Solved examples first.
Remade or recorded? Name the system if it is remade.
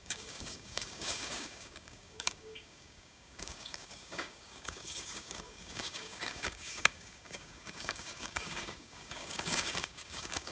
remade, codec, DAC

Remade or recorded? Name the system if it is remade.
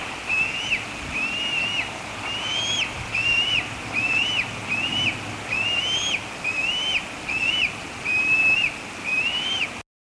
recorded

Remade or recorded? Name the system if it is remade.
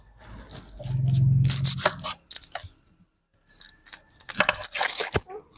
recorded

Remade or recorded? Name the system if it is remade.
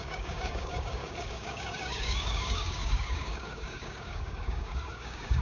remade, codec, DAC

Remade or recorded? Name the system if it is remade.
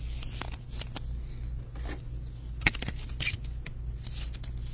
recorded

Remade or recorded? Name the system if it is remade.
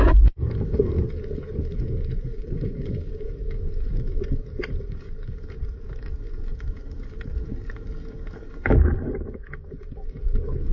remade, codec, DAC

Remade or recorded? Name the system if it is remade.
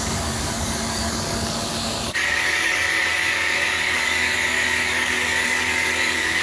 remade, codec, DAC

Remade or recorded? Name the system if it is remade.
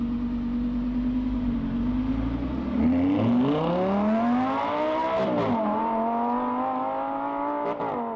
recorded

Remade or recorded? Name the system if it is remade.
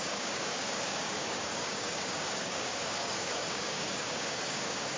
remade, codec, DAC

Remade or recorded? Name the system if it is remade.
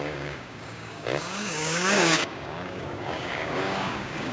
remade, codec, DAC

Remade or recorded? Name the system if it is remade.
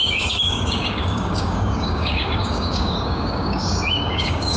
remade, codec, DAC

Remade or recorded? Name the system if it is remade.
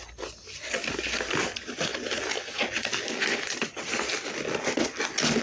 recorded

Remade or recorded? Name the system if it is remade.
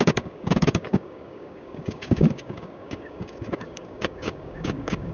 remade, codec, DAC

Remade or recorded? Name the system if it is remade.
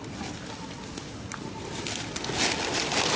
recorded